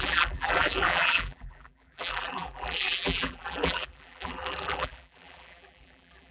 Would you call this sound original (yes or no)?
no